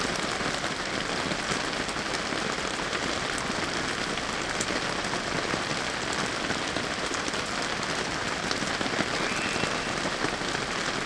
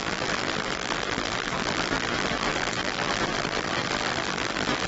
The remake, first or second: second